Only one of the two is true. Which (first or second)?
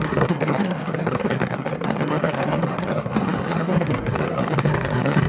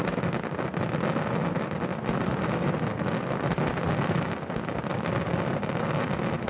second